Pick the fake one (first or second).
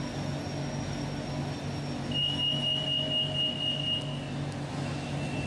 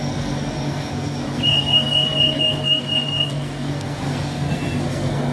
second